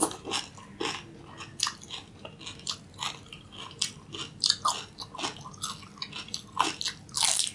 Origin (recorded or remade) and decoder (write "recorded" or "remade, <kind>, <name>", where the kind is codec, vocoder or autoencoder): recorded